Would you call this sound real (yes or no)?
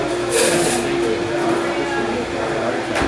yes